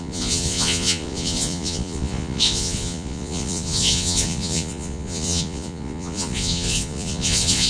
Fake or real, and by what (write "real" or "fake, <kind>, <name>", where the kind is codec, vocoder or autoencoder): fake, vocoder, Vocos